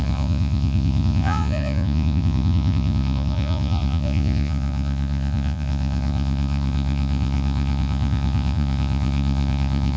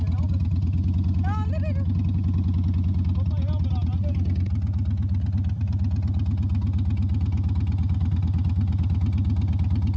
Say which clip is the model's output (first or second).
first